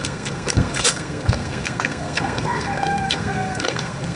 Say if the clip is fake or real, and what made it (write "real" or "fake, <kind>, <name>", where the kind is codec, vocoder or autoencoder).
fake, codec, SNAC